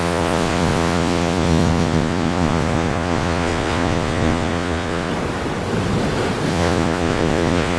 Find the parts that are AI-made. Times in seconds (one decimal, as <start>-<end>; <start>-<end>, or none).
0.0-5.1; 6.5-7.8